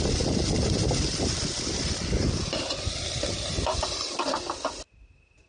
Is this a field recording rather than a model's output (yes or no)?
yes